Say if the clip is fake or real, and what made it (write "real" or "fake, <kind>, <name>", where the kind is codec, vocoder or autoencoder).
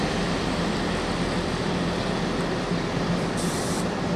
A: real